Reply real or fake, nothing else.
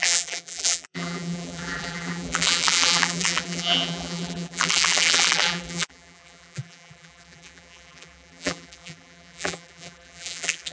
fake